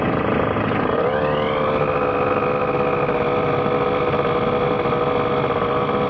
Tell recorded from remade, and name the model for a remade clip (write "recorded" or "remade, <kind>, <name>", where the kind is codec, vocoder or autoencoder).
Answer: recorded